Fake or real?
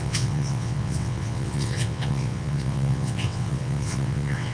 fake